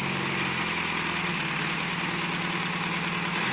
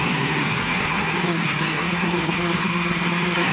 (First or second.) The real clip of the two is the first